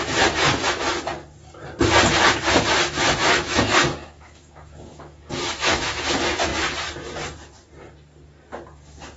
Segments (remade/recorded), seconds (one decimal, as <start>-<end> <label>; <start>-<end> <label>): 0.0-3.2 recorded; 3.2-6.0 remade; 6.0-9.2 recorded

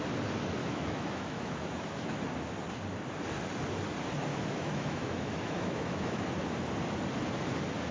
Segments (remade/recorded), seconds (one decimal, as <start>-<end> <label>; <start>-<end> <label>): 0.0-0.6 recorded; 0.6-2.2 remade; 2.2-4.3 recorded; 4.3-6.3 remade; 6.3-7.9 recorded

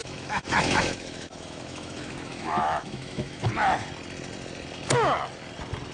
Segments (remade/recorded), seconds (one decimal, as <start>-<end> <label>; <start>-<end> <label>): 0.0-3.5 remade; 3.5-5.9 recorded

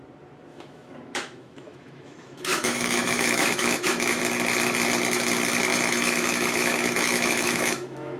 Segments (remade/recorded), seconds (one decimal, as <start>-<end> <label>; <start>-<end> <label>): 0.0-0.5 recorded; 0.5-4.2 remade; 4.2-5.7 recorded; 5.7-8.2 remade

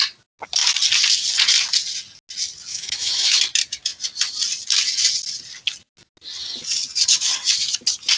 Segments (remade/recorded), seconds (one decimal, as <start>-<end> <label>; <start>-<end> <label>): 0.0-2.7 recorded; 2.7-3.4 remade; 3.4-8.2 recorded